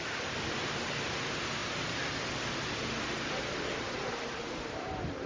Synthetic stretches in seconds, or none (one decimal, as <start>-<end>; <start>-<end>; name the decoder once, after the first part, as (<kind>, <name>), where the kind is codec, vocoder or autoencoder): none